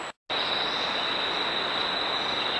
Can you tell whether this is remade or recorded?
recorded